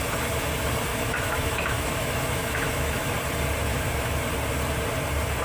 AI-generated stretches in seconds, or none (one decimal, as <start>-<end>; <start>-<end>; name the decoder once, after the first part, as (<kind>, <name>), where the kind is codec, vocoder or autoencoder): 0.9-3.0 (autoencoder, DAC-VAE); 3.7-4.2